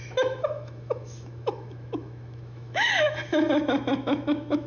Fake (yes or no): yes